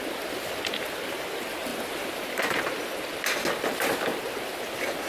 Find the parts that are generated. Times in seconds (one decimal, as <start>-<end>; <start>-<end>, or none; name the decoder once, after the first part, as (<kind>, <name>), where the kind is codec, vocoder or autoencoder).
1.7-2.6 (vocoder, BigVGAN v2)